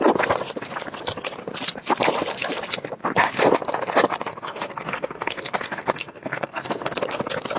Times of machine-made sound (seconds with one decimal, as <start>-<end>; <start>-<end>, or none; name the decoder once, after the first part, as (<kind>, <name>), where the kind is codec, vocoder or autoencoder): 4.3-6.9 (codec, SNAC)